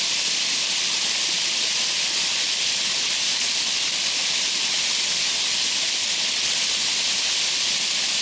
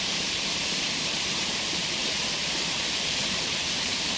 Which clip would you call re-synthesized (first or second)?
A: second